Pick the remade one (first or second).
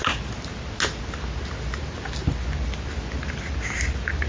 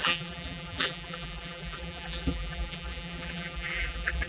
second